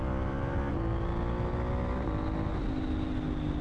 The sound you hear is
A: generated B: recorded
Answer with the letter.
B